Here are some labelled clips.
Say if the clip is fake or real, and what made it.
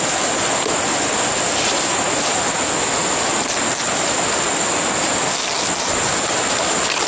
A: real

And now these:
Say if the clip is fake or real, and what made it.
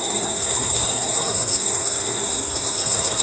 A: fake, codec, SNAC